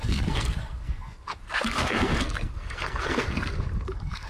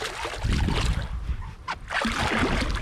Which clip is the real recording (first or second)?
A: second